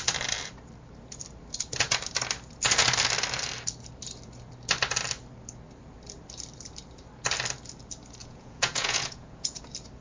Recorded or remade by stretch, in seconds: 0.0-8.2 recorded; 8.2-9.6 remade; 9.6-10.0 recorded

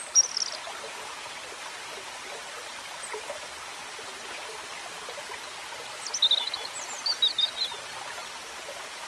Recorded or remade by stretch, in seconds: 0.0-2.4 recorded; 2.4-3.0 remade; 3.0-8.2 recorded; 8.2-9.1 remade

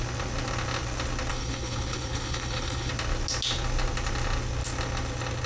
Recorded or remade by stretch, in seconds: 0.0-1.3 recorded; 1.3-2.9 remade; 2.9-5.5 recorded

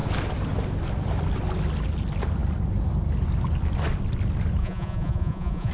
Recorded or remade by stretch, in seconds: 0.0-4.6 recorded; 4.6-5.7 remade

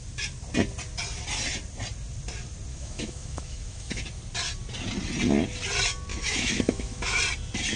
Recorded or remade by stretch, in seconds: 0.0-2.7 recorded; 2.7-4.0 remade; 4.0-6.1 recorded; 6.1-7.2 remade; 7.2-7.8 recorded

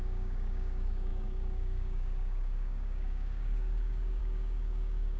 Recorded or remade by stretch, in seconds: 0.0-5.2 remade

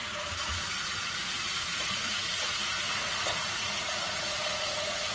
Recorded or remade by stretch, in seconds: 0.0-5.1 remade